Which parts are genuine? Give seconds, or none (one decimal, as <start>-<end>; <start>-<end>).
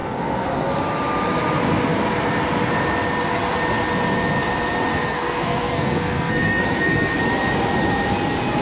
0.7-4.9; 7.2-8.6